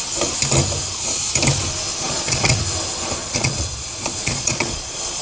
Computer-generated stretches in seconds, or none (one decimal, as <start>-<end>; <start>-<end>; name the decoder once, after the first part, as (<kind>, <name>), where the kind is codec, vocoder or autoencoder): 2.0-2.6 (vocoder, Vocos); 3.2-5.2